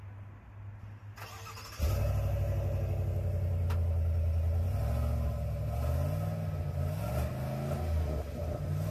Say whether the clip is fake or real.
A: real